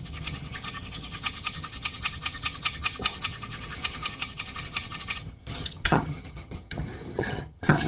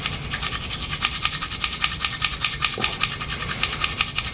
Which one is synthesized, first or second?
first